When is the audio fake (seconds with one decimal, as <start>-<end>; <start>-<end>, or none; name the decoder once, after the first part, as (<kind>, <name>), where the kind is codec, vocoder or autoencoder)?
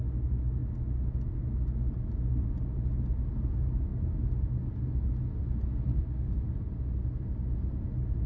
none